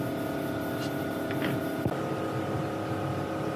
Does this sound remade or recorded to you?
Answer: recorded